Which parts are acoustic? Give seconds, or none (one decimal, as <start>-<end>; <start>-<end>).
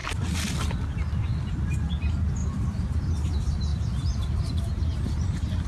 0.0-2.4; 3.3-3.7; 5.0-5.7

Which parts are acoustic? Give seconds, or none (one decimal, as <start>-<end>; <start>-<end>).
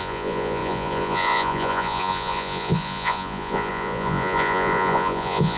none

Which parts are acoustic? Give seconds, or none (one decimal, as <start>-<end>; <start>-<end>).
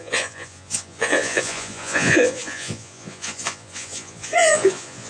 none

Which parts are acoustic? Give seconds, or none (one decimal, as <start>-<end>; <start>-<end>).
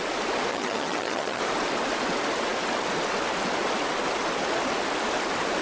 0.0-0.5; 1.4-5.6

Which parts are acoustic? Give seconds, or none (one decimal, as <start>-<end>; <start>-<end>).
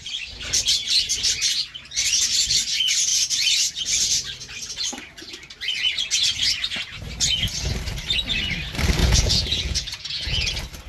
0.0-9.0; 10.5-10.9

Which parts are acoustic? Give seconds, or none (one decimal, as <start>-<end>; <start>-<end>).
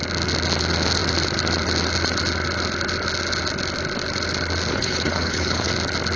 0.0-4.7; 5.7-6.2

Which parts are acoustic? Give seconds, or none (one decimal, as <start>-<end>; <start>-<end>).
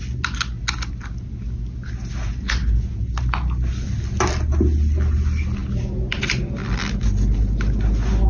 0.0-8.3